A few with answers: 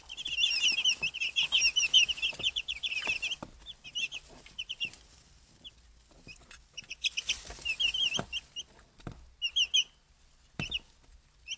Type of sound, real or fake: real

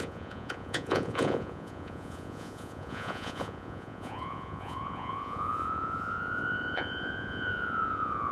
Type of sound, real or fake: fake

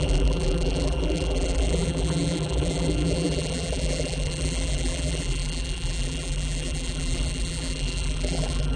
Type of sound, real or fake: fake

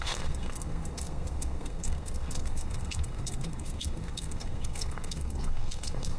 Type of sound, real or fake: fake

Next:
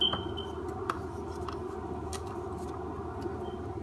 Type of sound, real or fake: real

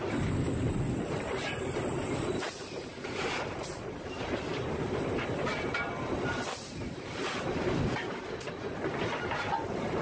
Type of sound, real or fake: fake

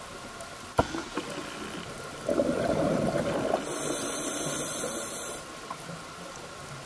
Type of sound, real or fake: real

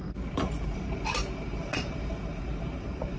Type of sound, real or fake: fake